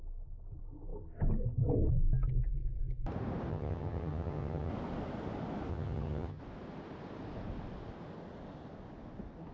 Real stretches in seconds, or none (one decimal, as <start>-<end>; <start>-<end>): 0.0-3.5; 4.7-5.7; 6.4-9.5